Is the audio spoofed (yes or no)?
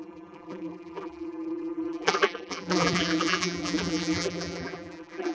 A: yes